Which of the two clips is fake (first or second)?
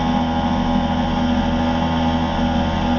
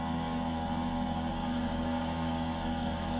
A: second